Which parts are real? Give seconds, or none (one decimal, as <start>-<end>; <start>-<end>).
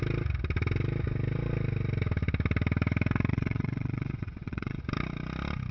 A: 0.0-3.3; 4.8-5.7